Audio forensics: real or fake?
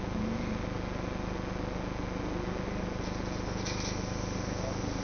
real